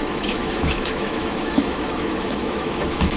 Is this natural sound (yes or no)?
no